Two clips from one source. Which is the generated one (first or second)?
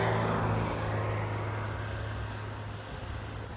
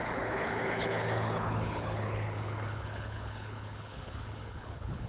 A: second